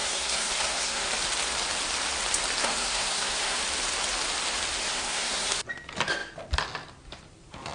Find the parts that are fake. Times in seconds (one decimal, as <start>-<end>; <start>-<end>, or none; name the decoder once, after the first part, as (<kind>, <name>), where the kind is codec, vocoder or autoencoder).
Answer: 0.0-1.1 (codec, SNAC); 2.6-3.6; 4.8-5.6